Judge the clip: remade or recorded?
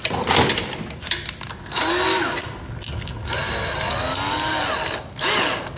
recorded